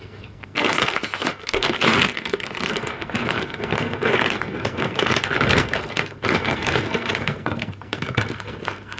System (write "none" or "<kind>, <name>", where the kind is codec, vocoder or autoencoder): codec, SNAC